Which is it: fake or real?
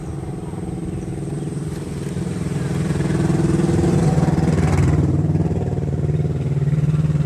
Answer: fake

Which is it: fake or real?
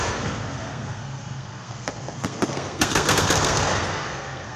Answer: fake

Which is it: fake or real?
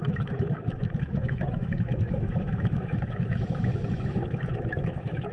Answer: fake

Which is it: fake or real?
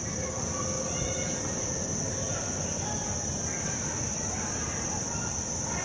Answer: real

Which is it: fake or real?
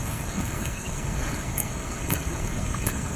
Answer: fake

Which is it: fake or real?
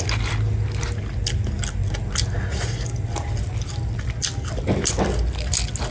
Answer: real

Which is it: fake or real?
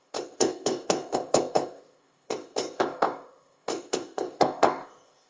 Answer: fake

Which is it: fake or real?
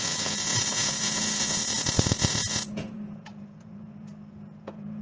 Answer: fake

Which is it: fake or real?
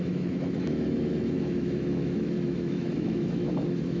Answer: fake